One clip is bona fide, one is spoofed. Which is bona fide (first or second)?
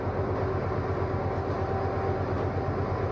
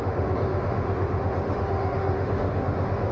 first